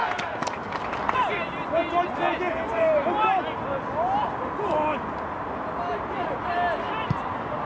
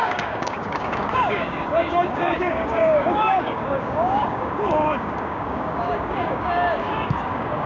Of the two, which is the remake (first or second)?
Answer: second